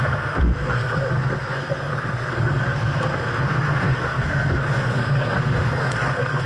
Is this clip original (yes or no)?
no